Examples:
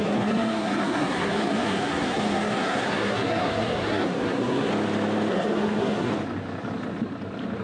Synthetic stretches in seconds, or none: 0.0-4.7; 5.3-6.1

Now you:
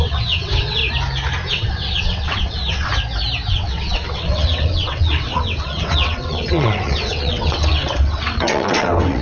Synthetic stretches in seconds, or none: 0.0-0.8; 1.5-2.9; 3.5-9.2

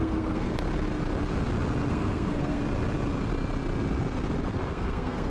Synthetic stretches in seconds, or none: 0.0-0.5; 1.9-2.6; 4.7-5.3

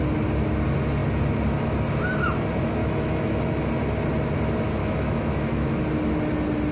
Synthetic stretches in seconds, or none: 2.8-3.7; 4.8-5.8

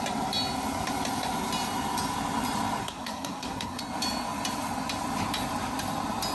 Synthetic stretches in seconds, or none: 2.8-3.8

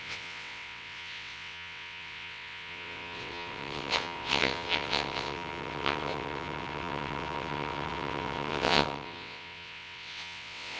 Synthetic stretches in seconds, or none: 0.0-10.8

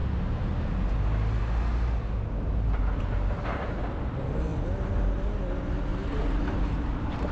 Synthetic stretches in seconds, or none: 5.9-7.3

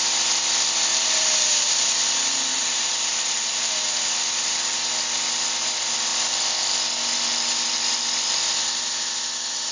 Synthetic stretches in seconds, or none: 0.9-1.7; 2.5-4.7